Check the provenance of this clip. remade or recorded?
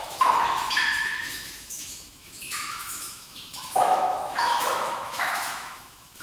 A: remade